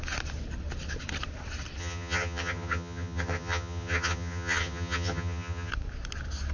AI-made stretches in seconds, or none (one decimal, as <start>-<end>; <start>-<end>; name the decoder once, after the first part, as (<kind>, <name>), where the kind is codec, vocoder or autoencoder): 1.8-5.7 (vocoder, HiFi-GAN)

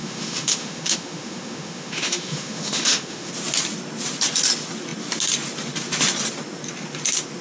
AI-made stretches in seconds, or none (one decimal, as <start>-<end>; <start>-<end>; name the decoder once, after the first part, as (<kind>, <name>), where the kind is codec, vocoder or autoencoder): 0.0-3.3 (autoencoder, DAC-VAE)

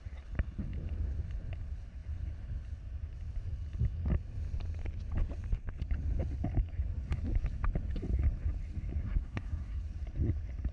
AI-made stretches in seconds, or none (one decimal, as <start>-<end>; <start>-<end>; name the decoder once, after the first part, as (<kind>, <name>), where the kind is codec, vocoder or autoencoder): 9.0-9.8 (codec, SNAC)

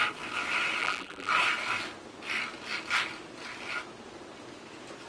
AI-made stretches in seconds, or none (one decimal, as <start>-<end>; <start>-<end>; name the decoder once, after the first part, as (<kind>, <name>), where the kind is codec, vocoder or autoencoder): 0.8-1.3 (vocoder, BigVGAN v2)

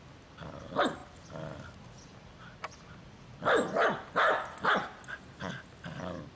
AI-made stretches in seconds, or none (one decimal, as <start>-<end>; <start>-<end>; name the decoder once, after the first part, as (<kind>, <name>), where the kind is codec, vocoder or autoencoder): none

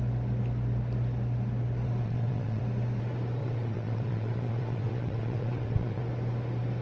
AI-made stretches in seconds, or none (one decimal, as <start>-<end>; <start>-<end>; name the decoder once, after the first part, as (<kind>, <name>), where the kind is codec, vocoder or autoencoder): 2.0-2.6 (vocoder, WaveNeXt); 3.4-6.0